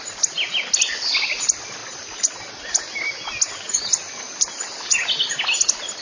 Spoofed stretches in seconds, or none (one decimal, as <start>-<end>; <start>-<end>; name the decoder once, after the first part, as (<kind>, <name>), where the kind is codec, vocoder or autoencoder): none